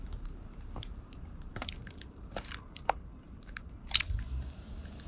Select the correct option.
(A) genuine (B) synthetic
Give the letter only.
B